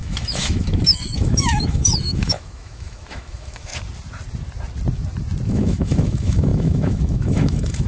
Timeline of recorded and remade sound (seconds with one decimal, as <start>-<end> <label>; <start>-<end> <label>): 0.0-3.7 remade; 3.7-5.5 recorded; 5.5-7.9 remade